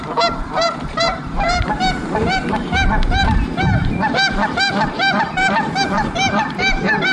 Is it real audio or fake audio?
fake